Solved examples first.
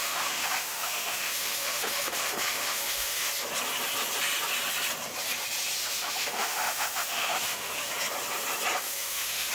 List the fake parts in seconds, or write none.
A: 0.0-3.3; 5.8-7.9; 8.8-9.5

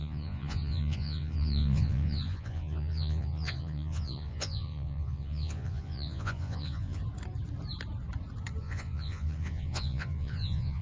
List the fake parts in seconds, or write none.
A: 0.0-7.0; 8.6-10.8

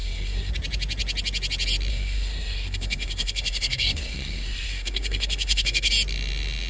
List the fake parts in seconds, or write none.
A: 0.0-0.5; 1.9-5.9